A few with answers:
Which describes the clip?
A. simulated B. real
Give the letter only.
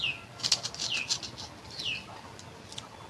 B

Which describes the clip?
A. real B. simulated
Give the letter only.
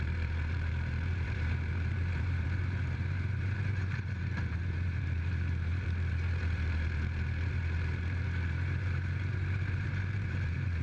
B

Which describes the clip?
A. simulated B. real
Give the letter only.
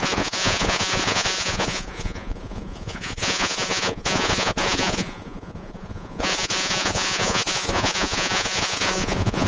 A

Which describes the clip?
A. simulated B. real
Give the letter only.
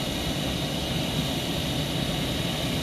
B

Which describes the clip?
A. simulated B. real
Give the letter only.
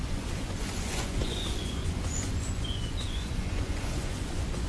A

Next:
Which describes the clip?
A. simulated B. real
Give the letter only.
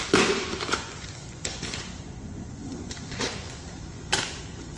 A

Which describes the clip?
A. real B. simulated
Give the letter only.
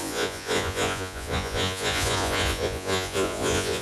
B